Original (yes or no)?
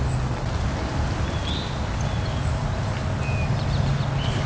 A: yes